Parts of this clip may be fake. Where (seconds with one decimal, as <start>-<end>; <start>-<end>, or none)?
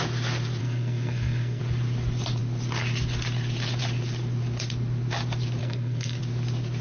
0.6-1.6; 5.6-6.2